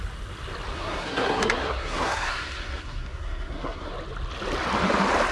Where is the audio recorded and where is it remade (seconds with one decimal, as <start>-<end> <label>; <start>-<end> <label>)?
0.0-0.7 recorded; 0.7-3.9 remade; 3.9-5.3 recorded